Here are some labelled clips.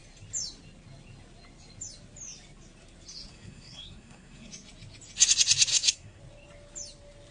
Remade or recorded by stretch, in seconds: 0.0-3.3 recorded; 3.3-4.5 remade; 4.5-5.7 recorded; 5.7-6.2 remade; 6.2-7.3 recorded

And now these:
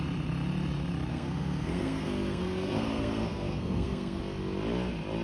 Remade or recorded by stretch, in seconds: 0.0-1.1 recorded; 1.1-4.2 remade; 4.2-5.2 recorded

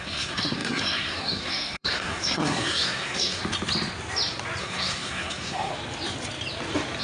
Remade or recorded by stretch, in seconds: 0.0-3.4 remade; 3.4-4.6 recorded; 4.6-5.7 remade; 5.7-7.0 recorded

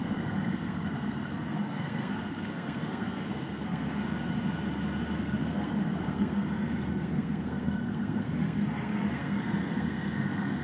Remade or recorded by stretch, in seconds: 0.0-4.0 remade; 4.0-5.2 recorded; 5.2-10.6 remade

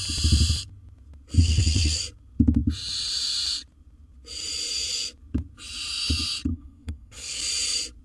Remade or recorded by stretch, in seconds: 0.0-1.4 recorded; 1.4-2.0 remade; 2.0-6.5 recorded; 6.5-7.4 remade; 7.4-8.0 recorded

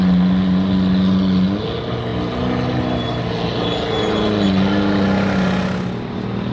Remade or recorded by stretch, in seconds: 0.0-6.5 recorded

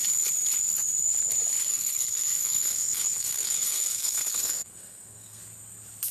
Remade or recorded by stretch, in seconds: 0.0-1.7 recorded; 1.7-5.4 remade; 5.4-6.1 recorded

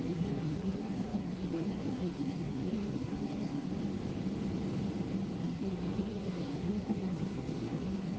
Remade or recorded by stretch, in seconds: 0.0-3.7 remade; 3.7-5.4 recorded; 5.4-8.2 remade